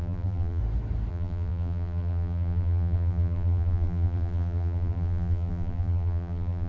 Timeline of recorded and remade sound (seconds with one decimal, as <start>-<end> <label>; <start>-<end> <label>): 0.0-0.6 remade; 0.6-1.1 recorded; 1.1-6.7 remade